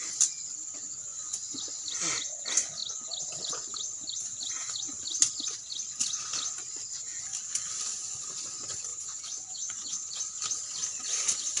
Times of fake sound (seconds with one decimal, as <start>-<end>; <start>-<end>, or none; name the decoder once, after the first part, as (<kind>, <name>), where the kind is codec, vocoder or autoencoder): 1.1-1.6 (vocoder, Vocos); 8.9-10.1

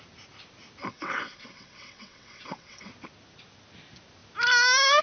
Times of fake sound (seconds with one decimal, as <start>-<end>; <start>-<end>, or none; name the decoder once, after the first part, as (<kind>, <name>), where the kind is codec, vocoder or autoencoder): 0.8-2.9 (vocoder, WaveNeXt)

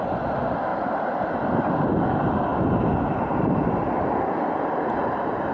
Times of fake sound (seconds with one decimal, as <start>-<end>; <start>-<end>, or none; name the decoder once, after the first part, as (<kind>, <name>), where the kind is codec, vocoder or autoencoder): none

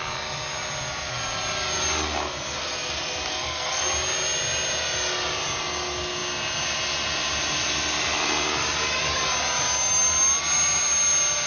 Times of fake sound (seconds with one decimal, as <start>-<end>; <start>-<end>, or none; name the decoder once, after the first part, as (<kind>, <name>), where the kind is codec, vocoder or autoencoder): 3.3-3.8 (codec, SNAC)